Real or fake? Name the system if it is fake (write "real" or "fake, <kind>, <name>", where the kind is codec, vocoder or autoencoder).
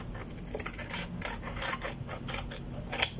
real